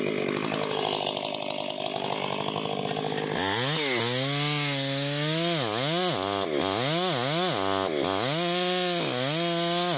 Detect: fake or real real